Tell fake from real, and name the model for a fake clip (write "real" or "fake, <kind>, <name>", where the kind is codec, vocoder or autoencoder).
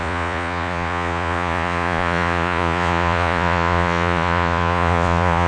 fake, vocoder, Vocos